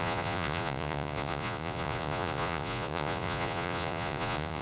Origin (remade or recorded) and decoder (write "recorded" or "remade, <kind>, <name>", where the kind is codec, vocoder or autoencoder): remade, vocoder, Vocos